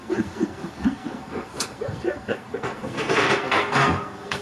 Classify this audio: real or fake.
fake